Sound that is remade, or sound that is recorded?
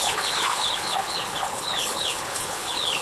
remade